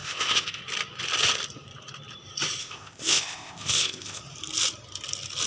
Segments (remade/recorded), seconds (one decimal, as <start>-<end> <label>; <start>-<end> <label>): 0.0-0.6 remade; 0.6-2.6 recorded; 2.6-4.2 remade; 4.2-5.5 recorded